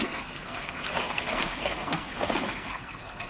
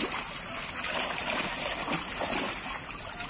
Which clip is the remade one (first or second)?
first